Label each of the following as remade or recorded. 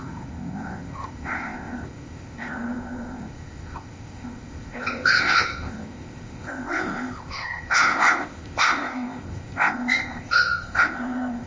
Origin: remade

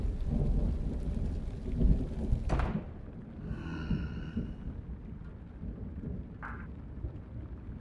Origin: recorded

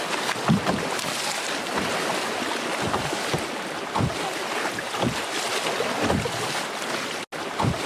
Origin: recorded